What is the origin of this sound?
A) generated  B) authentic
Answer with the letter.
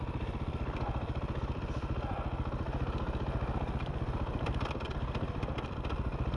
A